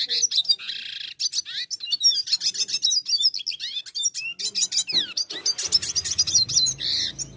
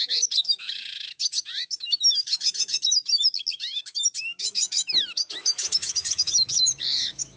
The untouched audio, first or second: first